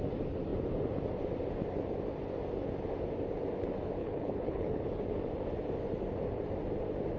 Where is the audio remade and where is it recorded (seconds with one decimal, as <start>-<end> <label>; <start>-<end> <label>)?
0.0-4.0 recorded; 4.0-4.8 remade; 4.8-7.2 recorded